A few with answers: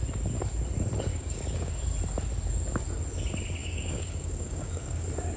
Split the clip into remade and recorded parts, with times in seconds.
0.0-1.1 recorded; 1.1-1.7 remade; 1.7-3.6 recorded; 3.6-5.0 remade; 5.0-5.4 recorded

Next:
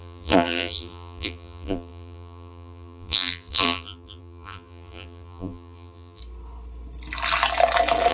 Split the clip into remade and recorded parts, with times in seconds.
0.0-6.2 remade; 6.2-8.1 recorded

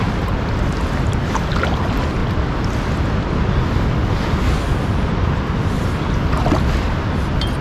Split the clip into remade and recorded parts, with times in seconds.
0.0-7.6 recorded

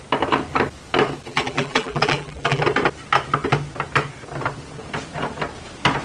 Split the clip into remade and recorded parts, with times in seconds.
0.0-1.3 recorded; 1.3-2.6 remade; 2.6-6.0 recorded

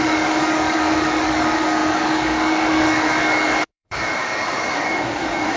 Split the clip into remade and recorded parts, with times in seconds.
0.0-5.6 remade

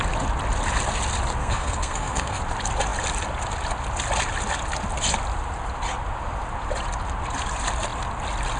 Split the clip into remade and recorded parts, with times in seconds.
0.0-1.4 recorded; 1.4-2.4 remade; 2.4-8.6 recorded